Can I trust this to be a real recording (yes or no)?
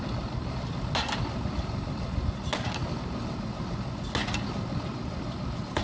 yes